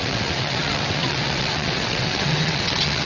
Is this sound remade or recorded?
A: remade